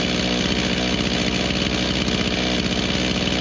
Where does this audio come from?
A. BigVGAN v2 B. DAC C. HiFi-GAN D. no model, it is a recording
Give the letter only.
D